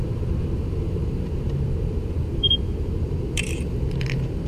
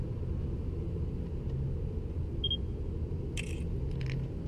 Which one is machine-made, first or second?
first